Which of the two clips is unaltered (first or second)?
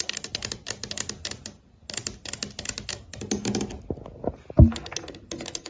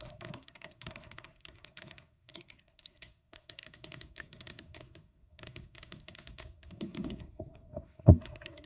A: first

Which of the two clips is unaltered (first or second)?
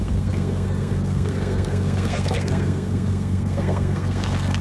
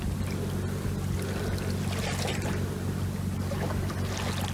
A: second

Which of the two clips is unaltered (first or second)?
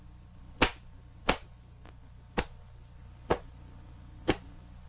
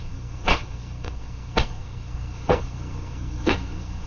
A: first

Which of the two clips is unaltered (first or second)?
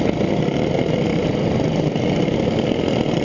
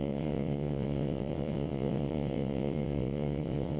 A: first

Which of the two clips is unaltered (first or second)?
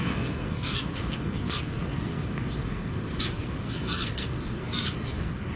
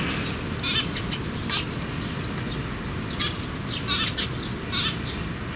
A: second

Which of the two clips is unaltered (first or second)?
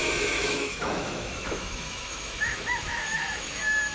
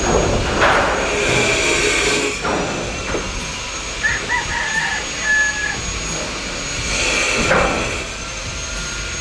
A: second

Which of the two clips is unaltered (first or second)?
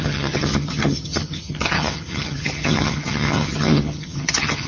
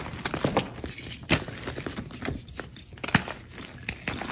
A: second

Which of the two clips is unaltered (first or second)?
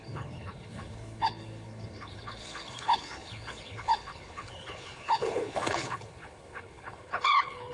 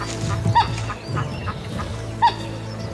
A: second